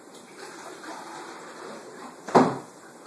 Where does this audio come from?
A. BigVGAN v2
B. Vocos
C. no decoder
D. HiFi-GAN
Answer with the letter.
A